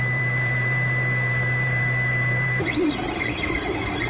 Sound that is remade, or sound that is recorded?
remade